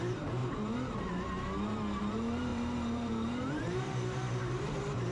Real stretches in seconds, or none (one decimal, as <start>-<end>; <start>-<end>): 0.4-2.0